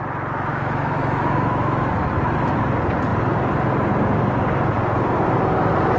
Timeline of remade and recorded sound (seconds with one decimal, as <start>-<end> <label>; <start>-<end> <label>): 0.0-0.5 recorded; 0.5-1.9 remade; 1.9-6.0 recorded